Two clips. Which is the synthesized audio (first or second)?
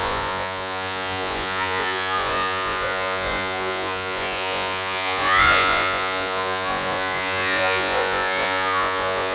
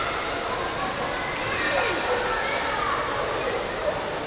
first